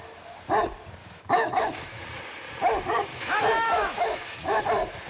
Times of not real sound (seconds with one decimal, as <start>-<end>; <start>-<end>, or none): 1.0-2.0; 3.1-4.6